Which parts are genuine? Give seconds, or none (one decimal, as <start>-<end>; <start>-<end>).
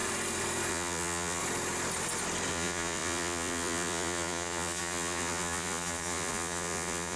0.0-0.7; 1.4-2.5